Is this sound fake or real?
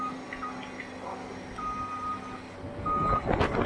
real